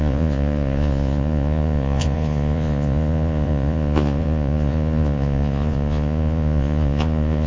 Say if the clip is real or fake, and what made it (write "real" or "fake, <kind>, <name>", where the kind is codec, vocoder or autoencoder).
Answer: fake, vocoder, Vocos